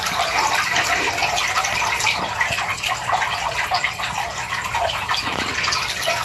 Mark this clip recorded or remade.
recorded